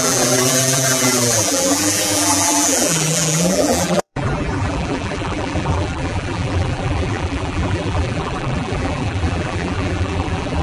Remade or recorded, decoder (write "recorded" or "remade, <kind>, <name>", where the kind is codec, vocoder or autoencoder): remade, vocoder, BigVGAN v2